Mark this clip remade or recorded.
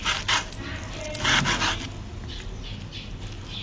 recorded